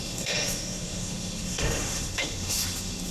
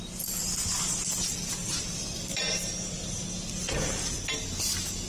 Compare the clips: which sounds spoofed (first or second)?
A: first